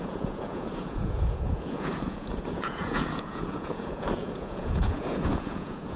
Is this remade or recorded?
remade